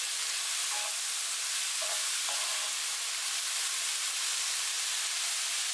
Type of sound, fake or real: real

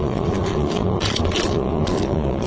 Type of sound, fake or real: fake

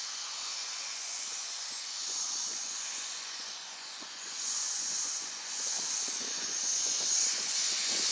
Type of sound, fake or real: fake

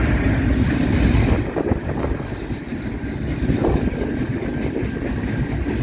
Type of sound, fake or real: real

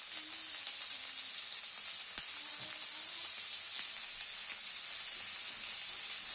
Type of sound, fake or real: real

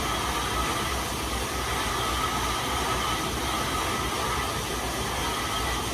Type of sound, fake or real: real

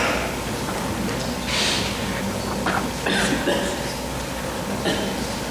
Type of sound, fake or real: real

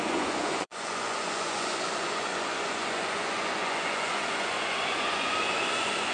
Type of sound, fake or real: fake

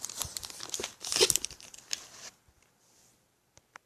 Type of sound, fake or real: real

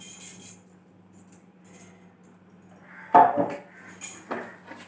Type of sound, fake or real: real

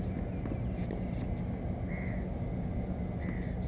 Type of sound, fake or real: real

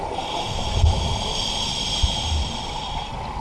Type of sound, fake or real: real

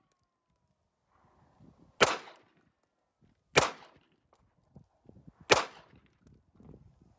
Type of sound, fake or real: real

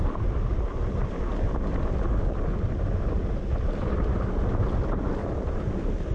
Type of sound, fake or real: real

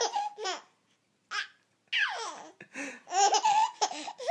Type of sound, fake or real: real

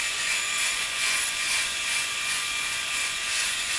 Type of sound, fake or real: fake